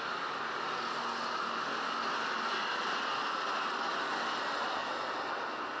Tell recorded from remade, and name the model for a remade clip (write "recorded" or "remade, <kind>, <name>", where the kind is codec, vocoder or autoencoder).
recorded